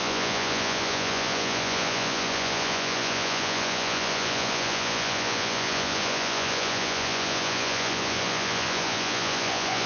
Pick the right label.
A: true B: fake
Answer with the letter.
B